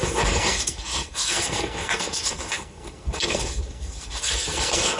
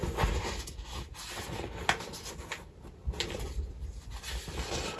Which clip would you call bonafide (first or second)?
second